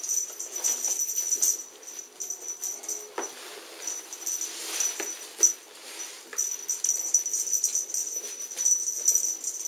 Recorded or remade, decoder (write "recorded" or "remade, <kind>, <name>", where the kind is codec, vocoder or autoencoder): recorded